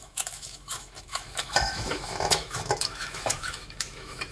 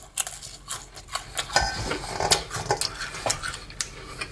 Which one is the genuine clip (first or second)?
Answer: second